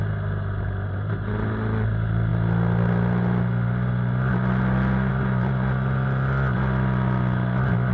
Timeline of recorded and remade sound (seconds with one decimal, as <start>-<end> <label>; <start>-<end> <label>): 0.0-7.9 recorded